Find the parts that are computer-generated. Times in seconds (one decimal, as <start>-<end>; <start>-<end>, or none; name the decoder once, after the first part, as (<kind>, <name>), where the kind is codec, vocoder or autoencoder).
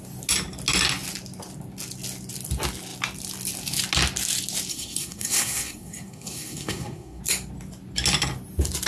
4.7-7.2 (codec, SNAC)